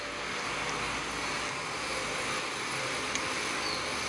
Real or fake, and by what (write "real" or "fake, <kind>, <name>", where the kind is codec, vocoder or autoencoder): real